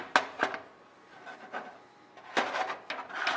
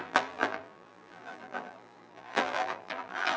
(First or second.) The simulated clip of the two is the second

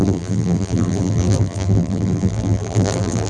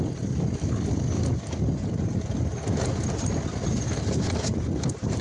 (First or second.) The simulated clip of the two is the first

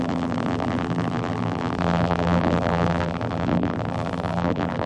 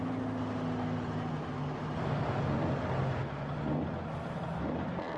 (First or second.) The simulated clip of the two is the first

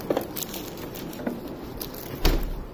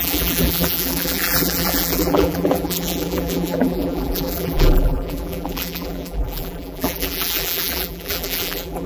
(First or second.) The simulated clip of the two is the second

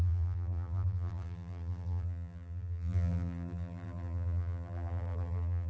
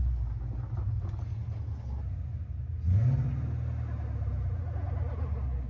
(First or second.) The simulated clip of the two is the first